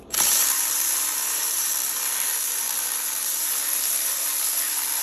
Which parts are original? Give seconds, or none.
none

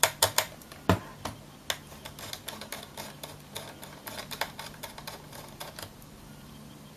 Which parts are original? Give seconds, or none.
1.1-4.0

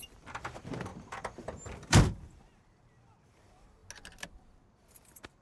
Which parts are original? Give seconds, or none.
3.8-4.9

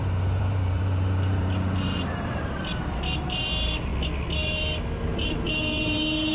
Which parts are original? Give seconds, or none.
3.9-5.5

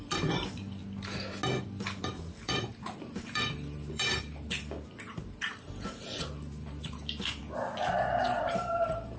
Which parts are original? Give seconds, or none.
0.8-1.6; 7.4-8.2